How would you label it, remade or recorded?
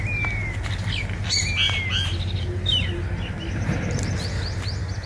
recorded